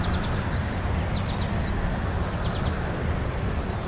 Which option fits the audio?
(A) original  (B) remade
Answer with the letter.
A